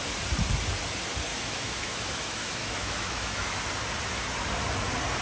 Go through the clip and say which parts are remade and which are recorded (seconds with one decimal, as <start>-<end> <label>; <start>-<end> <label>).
0.0-1.3 recorded; 1.3-3.6 remade; 3.6-5.2 recorded

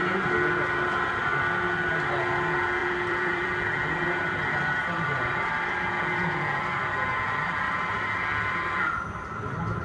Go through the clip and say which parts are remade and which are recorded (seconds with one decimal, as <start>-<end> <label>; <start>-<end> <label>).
0.0-2.8 recorded; 2.8-5.5 remade; 5.5-9.8 recorded

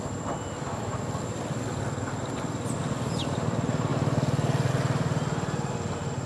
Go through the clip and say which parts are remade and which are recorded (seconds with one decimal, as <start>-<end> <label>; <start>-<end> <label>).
0.0-6.3 recorded

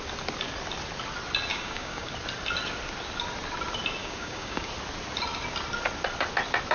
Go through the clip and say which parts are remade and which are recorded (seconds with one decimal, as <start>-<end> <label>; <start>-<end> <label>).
0.0-1.5 recorded; 1.5-2.1 remade; 2.1-4.0 recorded; 4.0-4.7 remade; 4.7-6.7 recorded

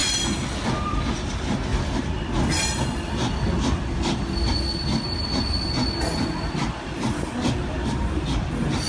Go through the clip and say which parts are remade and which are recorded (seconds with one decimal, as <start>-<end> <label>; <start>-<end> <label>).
0.0-8.9 recorded

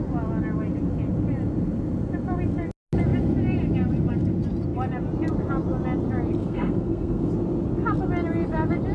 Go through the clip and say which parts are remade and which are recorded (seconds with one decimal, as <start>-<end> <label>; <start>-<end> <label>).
0.0-6.4 recorded; 6.4-7.3 remade; 7.3-8.9 recorded

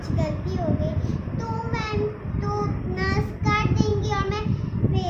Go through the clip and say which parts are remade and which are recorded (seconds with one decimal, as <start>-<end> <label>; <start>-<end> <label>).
0.0-5.1 recorded